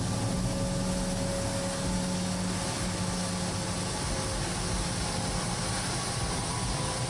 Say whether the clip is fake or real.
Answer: real